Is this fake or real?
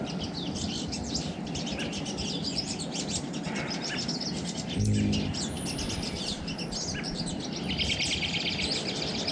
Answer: real